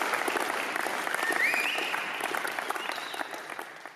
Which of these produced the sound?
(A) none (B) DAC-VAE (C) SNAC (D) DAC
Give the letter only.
A